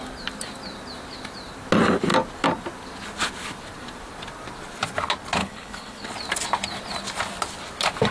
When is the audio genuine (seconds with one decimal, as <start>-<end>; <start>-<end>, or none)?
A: 0.0-5.4; 6.1-8.1